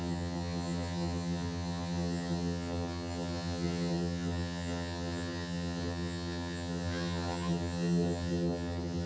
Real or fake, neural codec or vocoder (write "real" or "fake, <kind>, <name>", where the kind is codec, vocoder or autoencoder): fake, vocoder, HiFi-GAN